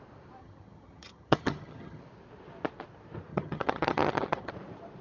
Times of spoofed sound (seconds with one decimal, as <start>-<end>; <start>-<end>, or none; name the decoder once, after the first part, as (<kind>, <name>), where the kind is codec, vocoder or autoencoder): 0.4-2.0 (vocoder, HiFi-GAN); 3.3-4.5